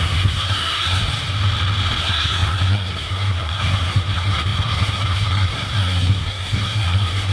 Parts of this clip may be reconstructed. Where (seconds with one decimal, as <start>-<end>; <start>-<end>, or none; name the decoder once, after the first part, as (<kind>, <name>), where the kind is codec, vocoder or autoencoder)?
0.0-1.1 (codec, SNAC); 2.0-7.3